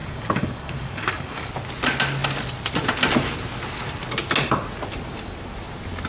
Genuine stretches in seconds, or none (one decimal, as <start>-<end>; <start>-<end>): 1.5-6.1